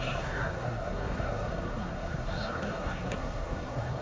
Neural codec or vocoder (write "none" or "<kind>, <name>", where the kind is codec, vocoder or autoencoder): codec, SNAC